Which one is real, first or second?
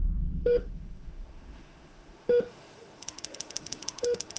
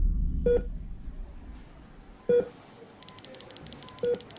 second